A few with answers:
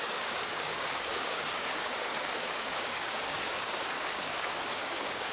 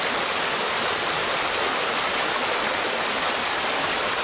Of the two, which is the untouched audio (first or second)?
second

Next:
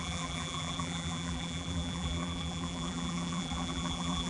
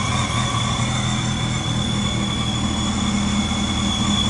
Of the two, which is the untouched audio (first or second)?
second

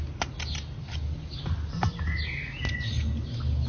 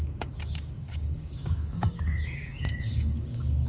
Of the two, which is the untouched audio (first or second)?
first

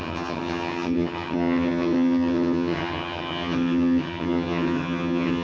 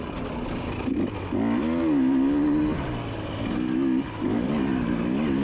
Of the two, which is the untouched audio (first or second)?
second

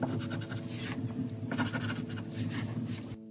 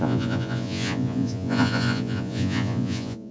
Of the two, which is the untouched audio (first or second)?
first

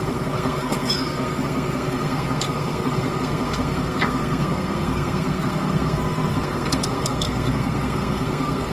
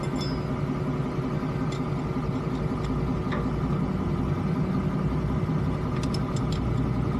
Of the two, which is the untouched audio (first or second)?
second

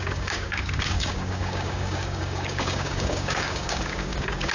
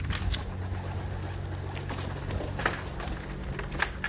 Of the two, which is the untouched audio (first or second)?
second